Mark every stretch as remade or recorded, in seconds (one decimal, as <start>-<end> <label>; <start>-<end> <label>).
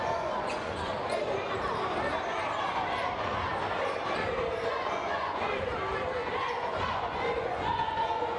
0.0-0.9 remade; 0.9-4.7 recorded; 4.7-5.7 remade; 5.7-6.2 recorded; 6.2-8.4 remade